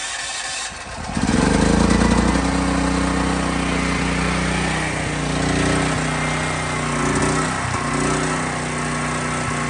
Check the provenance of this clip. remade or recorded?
recorded